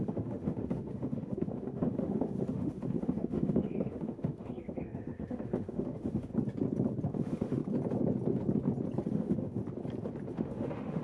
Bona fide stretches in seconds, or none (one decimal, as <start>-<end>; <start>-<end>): 6.3-7.1; 7.6-9.1; 9.6-10.3